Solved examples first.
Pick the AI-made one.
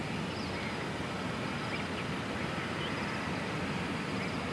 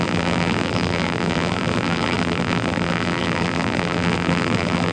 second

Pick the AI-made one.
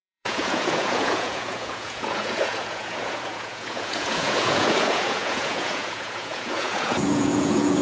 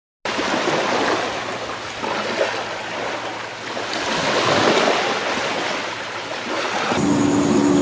first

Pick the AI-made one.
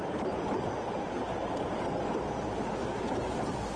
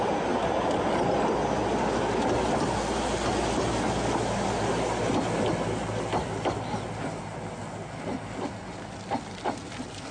first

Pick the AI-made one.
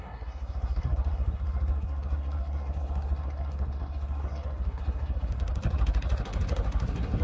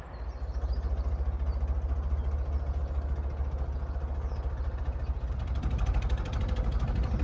first